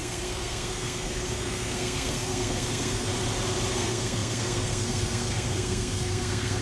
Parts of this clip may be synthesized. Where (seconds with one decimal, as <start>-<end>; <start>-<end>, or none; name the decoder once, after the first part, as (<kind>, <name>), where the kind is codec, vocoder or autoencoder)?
0.0-3.1 (codec, SNAC); 3.7-6.6